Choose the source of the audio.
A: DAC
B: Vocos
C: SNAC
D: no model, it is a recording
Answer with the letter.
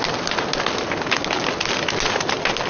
D